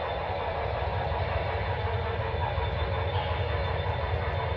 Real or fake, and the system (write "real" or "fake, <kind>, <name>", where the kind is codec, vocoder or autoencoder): real